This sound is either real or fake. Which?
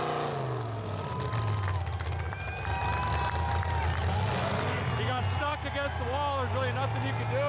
real